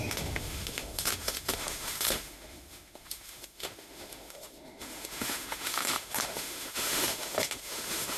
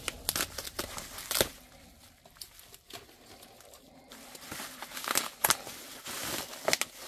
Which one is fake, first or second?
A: first